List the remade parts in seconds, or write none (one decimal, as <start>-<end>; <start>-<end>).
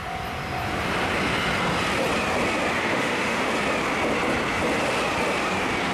2.8-3.5